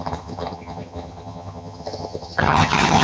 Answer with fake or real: fake